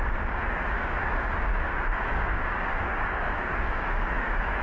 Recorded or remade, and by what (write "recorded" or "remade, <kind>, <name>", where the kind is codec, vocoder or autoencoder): remade, codec, DAC